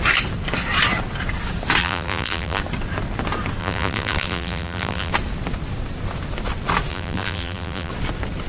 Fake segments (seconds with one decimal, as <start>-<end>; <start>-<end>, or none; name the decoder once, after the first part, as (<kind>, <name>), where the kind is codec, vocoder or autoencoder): 1.8-2.6 (vocoder, BigVGAN v2); 3.6-5.1; 6.9-7.9